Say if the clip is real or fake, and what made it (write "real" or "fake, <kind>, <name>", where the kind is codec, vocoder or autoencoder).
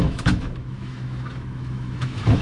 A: fake, autoencoder, DAC-VAE